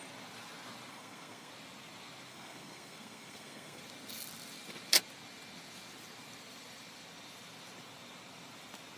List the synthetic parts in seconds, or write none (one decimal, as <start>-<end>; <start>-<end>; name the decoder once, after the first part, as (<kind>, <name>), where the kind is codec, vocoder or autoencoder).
0.9-1.5 (codec, SNAC); 2.3-3.8